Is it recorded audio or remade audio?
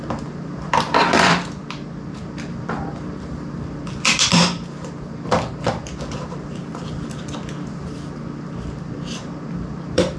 remade